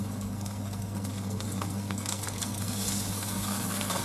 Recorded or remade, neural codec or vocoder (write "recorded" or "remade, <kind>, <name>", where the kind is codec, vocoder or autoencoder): remade, codec, SNAC